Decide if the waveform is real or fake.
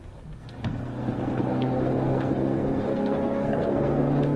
fake